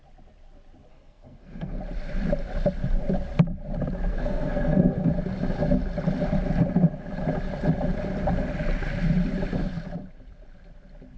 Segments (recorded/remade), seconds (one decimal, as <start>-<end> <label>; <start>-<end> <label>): 0.0-0.9 recorded; 0.9-1.8 remade; 1.8-4.1 recorded; 4.1-5.1 remade; 5.1-11.2 recorded